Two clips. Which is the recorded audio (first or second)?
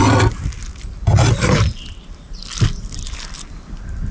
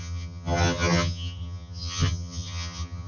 first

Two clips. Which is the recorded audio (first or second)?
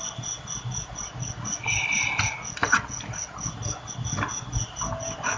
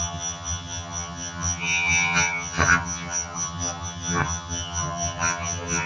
first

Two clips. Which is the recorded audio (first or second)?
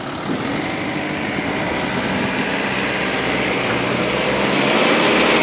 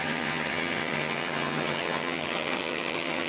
first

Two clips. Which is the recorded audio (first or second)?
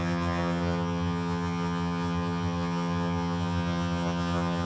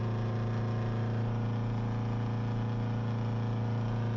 second